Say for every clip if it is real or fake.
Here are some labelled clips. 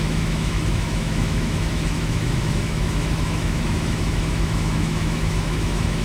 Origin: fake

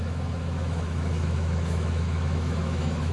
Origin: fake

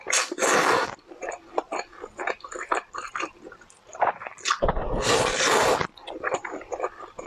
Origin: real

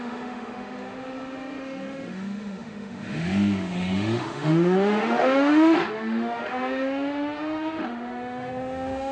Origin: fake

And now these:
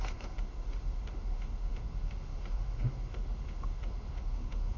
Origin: fake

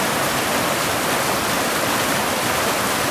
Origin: real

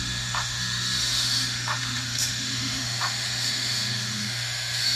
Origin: fake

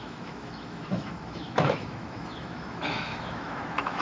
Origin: fake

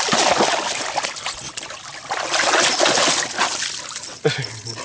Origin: real